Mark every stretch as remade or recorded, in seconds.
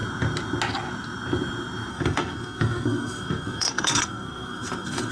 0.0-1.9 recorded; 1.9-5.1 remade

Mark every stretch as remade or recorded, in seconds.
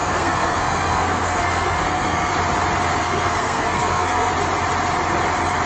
0.0-2.3 remade; 2.3-3.0 recorded; 3.0-4.3 remade; 4.3-5.7 recorded